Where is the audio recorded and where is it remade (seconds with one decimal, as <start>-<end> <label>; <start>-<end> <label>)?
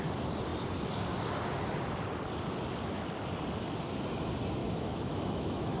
0.0-4.6 recorded; 4.6-5.8 remade